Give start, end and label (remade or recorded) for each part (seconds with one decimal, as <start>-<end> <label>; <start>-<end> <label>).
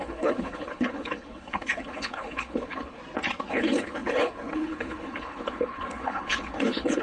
0.0-3.0 remade; 3.0-3.5 recorded; 3.5-7.0 remade